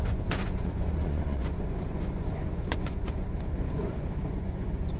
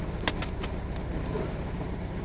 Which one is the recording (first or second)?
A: second